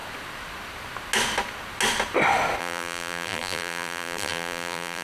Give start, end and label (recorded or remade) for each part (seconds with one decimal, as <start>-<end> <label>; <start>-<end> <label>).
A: 0.0-2.6 recorded; 2.6-5.0 remade